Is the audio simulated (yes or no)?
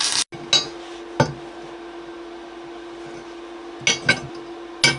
no